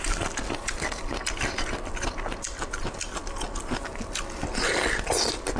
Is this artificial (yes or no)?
no